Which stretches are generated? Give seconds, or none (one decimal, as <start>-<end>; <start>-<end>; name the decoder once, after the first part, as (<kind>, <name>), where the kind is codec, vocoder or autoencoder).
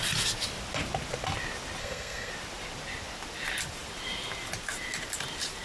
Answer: 1.8-2.3 (codec, SNAC)